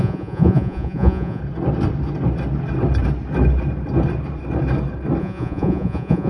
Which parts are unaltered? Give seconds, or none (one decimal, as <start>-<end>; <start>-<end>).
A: 1.4-5.2